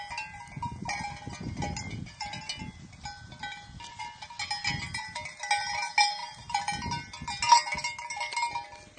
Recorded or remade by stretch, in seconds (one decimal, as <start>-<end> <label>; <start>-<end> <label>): 0.0-6.2 recorded; 6.2-6.9 remade; 6.9-9.0 recorded